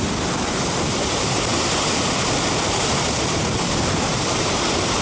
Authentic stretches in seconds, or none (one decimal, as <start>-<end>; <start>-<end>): 0.0-5.0